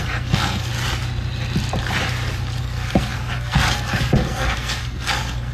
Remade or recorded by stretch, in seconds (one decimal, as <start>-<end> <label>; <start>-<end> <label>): 0.0-0.7 remade; 0.7-2.6 recorded; 2.6-5.5 remade